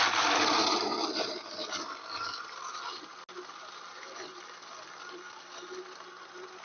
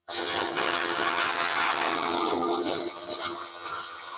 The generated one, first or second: second